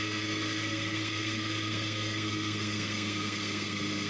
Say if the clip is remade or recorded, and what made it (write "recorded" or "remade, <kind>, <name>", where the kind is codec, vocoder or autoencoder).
remade, codec, SNAC